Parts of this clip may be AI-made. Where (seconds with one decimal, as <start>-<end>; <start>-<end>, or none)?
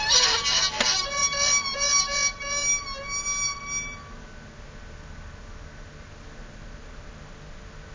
none